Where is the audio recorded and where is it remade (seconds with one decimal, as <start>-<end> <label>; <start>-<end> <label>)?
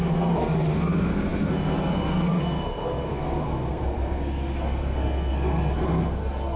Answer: 0.0-6.6 remade